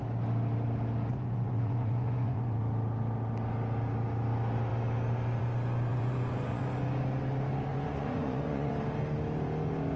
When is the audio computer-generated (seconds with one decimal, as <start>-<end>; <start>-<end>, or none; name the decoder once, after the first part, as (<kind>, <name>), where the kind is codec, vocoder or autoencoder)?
1.1-2.6 (vocoder, Vocos); 5.9-6.6; 7.7-8.7

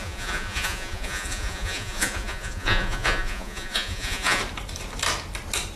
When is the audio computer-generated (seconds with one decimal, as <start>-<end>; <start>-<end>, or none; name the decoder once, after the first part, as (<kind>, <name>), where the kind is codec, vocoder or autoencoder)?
0.0-4.4 (vocoder, Vocos)

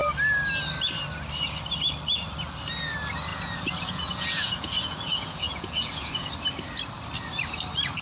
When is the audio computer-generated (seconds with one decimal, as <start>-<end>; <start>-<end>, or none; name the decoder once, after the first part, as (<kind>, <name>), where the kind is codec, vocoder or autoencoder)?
3.3-6.3 (vocoder, Vocos)